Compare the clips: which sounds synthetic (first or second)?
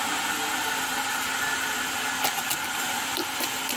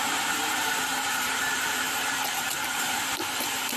second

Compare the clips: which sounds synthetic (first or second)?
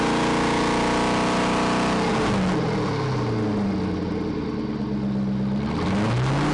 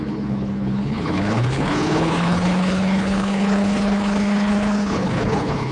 second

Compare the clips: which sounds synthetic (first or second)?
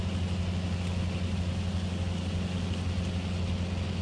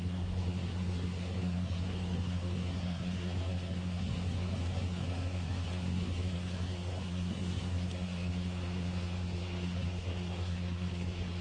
second